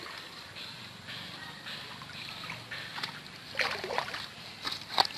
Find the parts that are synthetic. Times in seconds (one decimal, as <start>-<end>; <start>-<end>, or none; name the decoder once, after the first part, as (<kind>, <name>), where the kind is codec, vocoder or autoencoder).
none